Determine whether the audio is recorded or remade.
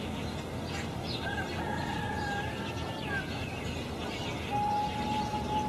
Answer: recorded